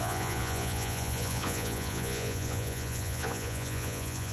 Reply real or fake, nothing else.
fake